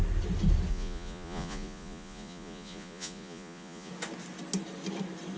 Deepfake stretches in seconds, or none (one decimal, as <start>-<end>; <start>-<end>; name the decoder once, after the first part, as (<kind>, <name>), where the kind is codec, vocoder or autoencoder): 0.7-3.9 (vocoder, Vocos)